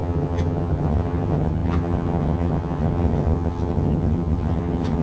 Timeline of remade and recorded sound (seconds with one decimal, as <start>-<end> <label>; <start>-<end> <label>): 0.0-5.0 remade